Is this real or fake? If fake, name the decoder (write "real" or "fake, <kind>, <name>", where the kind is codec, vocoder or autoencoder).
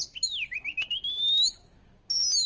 real